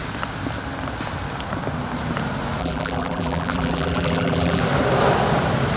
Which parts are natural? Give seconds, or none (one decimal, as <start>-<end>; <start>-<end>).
0.0-2.6; 4.6-5.8